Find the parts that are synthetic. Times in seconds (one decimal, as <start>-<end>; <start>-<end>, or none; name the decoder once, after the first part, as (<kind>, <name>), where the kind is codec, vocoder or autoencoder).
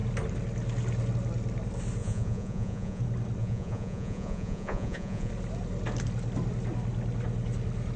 2.0-3.0 (vocoder, Vocos); 3.4-5.3